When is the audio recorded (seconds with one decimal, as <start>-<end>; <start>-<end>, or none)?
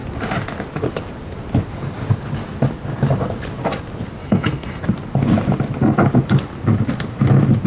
0.0-4.2; 4.8-7.7